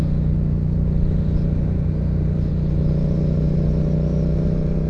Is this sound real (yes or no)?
yes